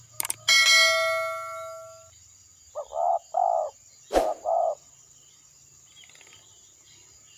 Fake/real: real